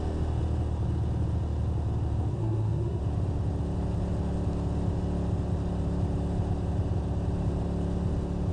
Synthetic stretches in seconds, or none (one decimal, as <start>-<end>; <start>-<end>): 2.3-3.0